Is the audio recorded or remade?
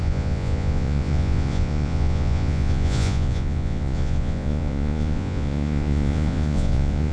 remade